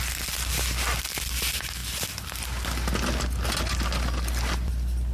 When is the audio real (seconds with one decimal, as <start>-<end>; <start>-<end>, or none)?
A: 0.0-5.1